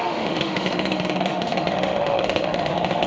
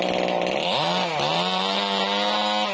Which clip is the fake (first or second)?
first